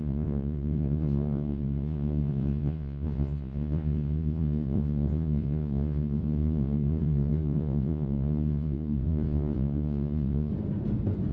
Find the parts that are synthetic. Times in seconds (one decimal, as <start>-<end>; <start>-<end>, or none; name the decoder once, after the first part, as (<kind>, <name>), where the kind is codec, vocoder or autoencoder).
0.0-10.5 (vocoder, Vocos)